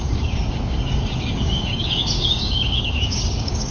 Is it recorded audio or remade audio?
remade